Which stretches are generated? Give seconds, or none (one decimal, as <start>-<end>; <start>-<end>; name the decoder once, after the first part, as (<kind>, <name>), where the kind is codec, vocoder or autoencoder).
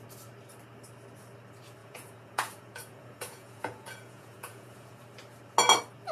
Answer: 1.8-5.0 (vocoder, Vocos)